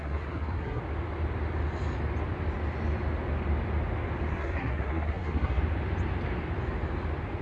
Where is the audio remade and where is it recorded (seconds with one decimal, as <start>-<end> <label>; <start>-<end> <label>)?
0.0-0.8 remade; 0.8-4.3 recorded; 4.3-5.6 remade; 5.6-7.4 recorded

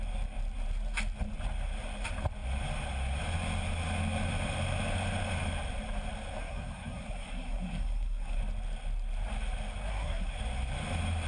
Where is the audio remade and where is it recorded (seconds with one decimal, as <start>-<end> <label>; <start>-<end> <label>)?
0.0-6.4 recorded; 6.4-8.4 remade; 8.4-9.9 recorded; 9.9-10.4 remade; 10.4-11.3 recorded

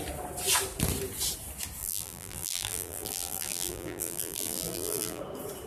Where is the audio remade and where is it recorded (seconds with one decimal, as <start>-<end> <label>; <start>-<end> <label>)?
0.0-1.8 recorded; 1.8-5.2 remade; 5.2-5.7 recorded

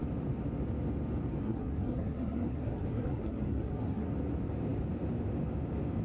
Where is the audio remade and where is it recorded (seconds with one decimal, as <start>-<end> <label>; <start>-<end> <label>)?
0.0-1.4 recorded; 1.4-4.1 remade; 4.1-6.0 recorded

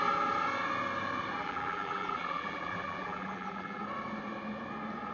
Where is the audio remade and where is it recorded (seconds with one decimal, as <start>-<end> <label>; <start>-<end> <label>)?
0.0-1.4 recorded; 1.4-3.8 remade; 3.8-5.1 recorded